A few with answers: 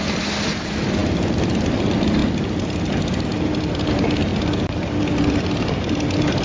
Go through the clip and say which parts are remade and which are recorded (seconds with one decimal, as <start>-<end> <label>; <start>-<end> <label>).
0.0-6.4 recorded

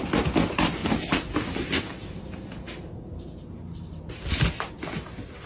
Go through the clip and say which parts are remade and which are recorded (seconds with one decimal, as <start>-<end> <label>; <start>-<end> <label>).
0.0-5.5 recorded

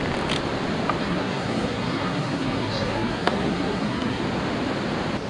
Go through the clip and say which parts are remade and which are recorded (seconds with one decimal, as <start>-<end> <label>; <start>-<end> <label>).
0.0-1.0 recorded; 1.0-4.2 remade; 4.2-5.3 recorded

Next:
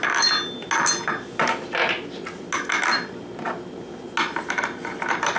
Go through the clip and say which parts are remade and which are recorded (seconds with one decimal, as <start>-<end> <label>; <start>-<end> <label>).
0.0-5.4 recorded

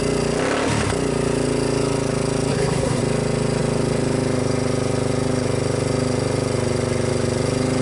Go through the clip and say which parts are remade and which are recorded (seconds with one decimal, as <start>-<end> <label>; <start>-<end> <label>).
0.0-2.5 recorded; 2.5-3.0 remade; 3.0-7.8 recorded